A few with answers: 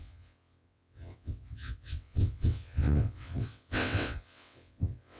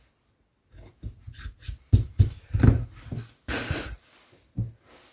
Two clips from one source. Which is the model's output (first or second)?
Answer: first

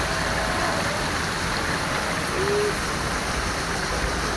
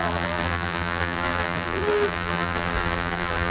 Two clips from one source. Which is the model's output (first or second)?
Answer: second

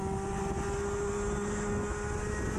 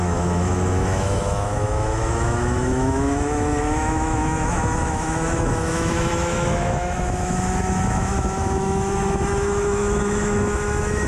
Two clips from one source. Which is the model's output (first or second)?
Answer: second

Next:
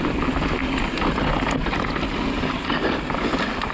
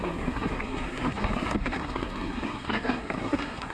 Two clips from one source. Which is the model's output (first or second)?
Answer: second